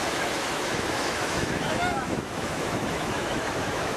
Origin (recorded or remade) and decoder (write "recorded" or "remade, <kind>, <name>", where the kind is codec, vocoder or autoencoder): remade, autoencoder, DAC-VAE